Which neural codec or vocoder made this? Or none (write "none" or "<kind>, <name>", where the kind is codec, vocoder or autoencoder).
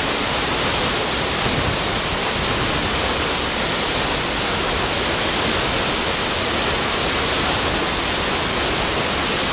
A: none